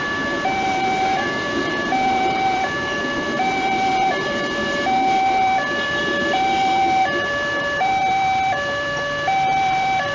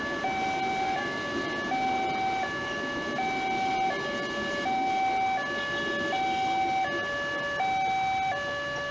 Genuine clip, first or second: second